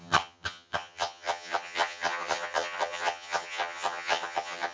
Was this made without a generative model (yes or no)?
no